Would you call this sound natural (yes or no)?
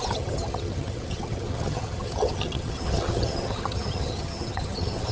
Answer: no